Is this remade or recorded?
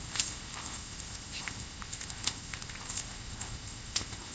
remade